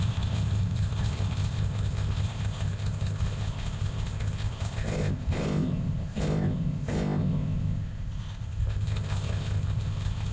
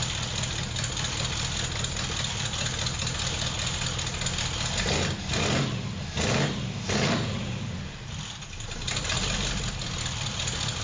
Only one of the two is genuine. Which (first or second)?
second